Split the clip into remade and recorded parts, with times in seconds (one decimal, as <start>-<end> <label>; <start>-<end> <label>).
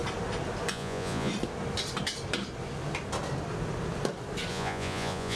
0.0-0.7 recorded; 0.7-1.3 remade; 1.3-4.5 recorded; 4.5-5.4 remade